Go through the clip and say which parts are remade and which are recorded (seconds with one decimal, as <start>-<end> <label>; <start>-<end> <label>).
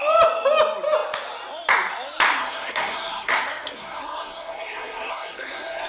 0.0-2.4 recorded; 2.4-5.9 remade